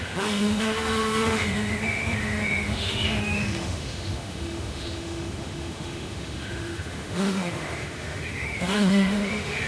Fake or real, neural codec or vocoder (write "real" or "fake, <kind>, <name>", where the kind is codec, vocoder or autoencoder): fake, autoencoder, DAC-VAE